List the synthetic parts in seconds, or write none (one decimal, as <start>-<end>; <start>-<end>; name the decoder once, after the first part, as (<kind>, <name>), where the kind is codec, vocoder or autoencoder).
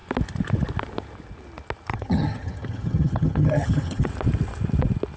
1.9-4.1 (vocoder, HiFi-GAN)